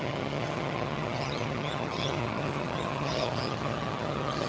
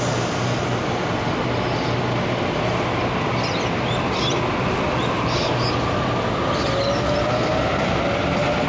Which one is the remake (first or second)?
first